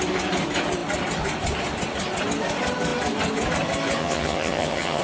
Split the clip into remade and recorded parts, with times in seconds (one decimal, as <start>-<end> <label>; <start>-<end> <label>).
0.0-4.0 recorded; 4.0-5.0 remade